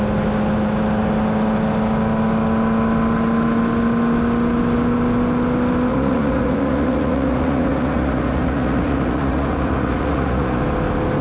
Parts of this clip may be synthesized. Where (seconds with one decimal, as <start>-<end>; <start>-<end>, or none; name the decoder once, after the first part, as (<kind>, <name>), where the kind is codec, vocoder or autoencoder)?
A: 5.9-10.6 (vocoder, Vocos)